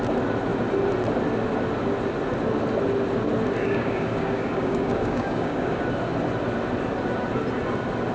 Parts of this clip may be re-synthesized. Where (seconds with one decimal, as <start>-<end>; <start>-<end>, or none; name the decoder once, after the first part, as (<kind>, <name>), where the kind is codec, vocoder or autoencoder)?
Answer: 3.6-5.8 (codec, DAC)